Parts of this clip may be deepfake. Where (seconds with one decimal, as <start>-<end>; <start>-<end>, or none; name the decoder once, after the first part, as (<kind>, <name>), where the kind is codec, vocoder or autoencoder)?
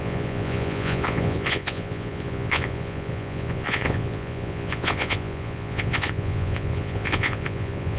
0.0-8.0 (vocoder, Vocos)